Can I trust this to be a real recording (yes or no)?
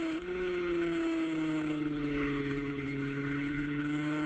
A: no